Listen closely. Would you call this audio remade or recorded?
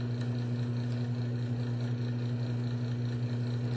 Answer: recorded